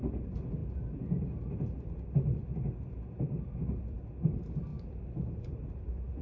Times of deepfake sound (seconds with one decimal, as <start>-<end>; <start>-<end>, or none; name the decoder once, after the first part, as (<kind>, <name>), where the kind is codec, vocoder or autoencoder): none